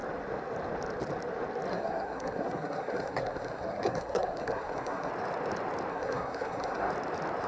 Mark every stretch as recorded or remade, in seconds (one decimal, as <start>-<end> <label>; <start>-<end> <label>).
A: 0.0-1.7 recorded; 1.7-5.1 remade; 5.1-5.9 recorded; 5.9-6.9 remade; 6.9-7.5 recorded